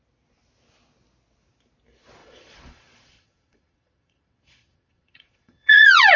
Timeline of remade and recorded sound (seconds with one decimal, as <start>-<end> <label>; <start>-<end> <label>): 0.0-2.2 recorded; 2.2-6.2 remade